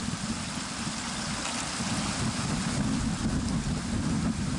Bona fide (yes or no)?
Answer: yes